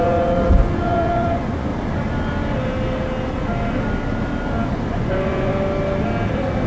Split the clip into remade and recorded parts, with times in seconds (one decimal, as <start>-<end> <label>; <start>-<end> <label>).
0.0-1.7 remade; 1.7-4.9 recorded; 4.9-5.5 remade; 5.5-6.7 recorded